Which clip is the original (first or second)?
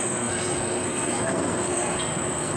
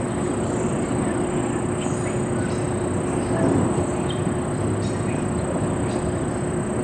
second